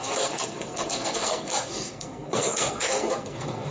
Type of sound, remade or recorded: remade